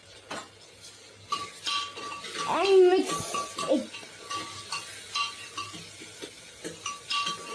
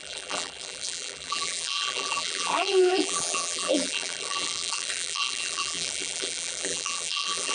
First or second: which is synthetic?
second